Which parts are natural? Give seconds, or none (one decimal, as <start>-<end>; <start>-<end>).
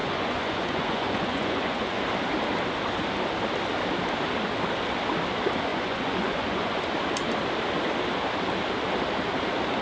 2.0-5.7; 6.8-9.8